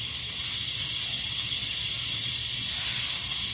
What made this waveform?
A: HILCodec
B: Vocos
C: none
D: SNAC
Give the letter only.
C